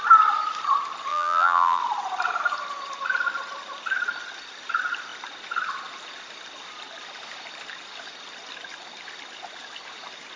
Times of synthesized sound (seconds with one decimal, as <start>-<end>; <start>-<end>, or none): 1.1-1.8

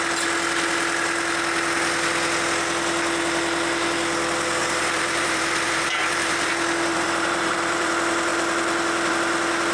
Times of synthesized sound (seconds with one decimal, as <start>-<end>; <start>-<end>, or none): 4.6-6.5; 6.9-7.9

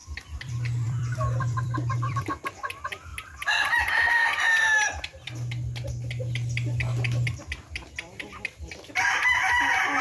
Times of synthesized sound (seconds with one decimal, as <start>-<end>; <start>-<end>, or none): 0.0-2.2

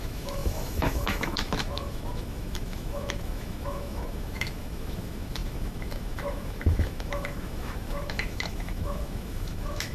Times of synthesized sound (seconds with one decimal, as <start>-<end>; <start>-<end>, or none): 0.0-9.9

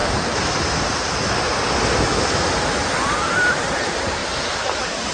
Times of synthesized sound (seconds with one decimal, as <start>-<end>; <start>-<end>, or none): none

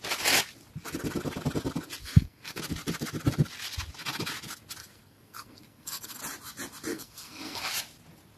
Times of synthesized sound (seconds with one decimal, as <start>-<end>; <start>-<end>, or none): 2.0-2.6; 4.8-6.2; 6.9-7.7

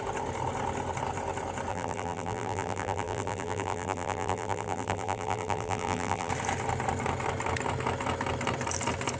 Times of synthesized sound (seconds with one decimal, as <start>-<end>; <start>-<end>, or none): 1.7-6.3